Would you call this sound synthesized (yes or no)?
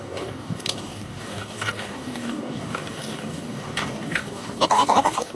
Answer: yes